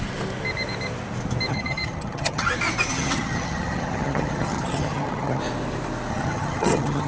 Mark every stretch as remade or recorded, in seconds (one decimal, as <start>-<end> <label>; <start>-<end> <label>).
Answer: 0.0-1.5 recorded; 1.5-2.5 remade; 2.5-2.9 recorded; 2.9-5.4 remade; 5.4-6.1 recorded; 6.1-7.1 remade